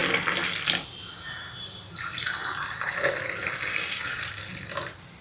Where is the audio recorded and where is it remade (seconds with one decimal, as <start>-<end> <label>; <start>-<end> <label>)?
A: 0.0-3.7 recorded; 3.7-4.2 remade; 4.2-5.2 recorded